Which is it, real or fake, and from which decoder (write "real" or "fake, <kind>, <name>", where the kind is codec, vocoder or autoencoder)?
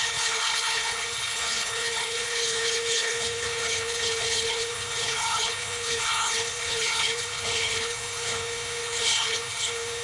fake, codec, HILCodec